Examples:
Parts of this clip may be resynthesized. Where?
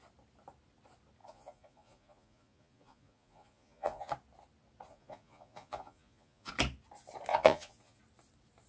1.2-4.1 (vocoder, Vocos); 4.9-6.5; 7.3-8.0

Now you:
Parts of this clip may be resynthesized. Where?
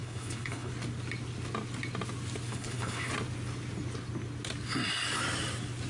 0.0-0.7 (codec, HILCodec); 2.5-3.1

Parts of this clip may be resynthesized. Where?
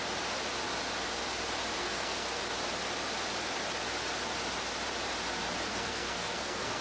1.8-2.4 (codec, SNAC); 5.7-6.8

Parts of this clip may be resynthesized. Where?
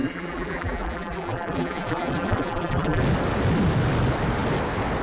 0.0-3.0 (vocoder, BigVGAN v2)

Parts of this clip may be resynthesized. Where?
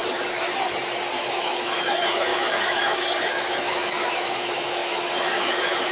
1.2-5.9 (autoencoder, DAC-VAE)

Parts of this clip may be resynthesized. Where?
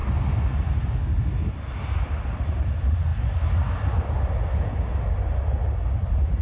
none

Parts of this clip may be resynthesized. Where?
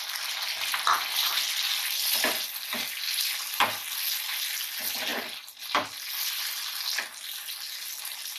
none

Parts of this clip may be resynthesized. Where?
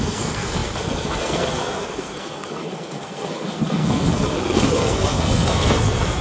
0.0-6.2 (codec, SNAC)